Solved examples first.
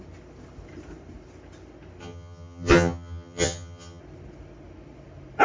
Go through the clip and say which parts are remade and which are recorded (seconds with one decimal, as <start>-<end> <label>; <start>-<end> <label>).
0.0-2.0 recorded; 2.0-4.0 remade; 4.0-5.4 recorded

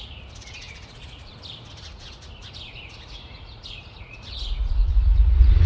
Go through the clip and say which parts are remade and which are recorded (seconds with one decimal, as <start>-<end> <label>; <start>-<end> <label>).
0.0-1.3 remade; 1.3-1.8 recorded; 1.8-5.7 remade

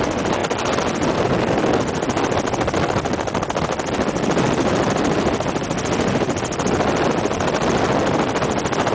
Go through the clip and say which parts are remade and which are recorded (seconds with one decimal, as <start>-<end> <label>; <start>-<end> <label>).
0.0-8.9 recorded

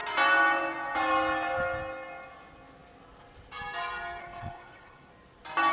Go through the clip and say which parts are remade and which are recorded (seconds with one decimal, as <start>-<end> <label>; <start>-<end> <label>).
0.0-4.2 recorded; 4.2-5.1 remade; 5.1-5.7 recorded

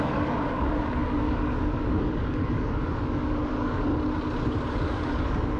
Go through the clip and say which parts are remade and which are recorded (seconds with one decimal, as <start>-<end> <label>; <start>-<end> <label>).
0.0-3.9 remade; 3.9-4.7 recorded; 4.7-5.6 remade

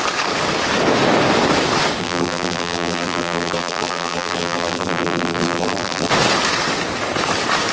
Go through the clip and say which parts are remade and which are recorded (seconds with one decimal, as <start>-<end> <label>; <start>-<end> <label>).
0.0-2.0 recorded; 2.0-6.1 remade; 6.1-7.7 recorded